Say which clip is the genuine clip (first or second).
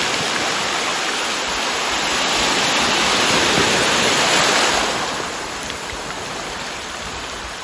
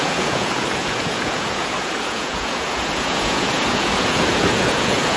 first